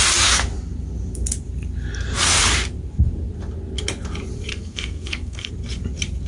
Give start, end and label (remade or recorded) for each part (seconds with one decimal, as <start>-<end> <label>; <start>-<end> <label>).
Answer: 0.0-4.5 recorded; 4.5-5.5 remade; 5.5-6.3 recorded